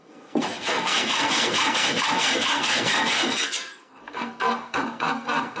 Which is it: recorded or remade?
remade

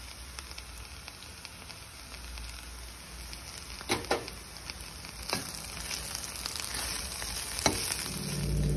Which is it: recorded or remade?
recorded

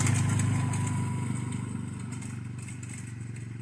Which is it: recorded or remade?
recorded